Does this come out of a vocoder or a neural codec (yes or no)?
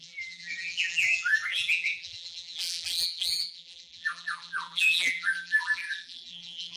yes